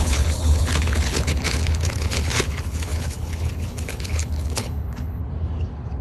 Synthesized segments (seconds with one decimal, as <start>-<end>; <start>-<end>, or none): 0.0-5.2